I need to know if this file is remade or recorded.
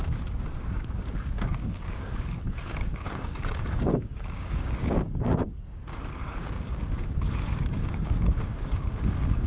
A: remade